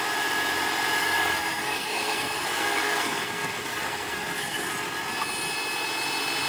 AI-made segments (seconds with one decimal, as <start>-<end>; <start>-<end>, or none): 1.0-4.7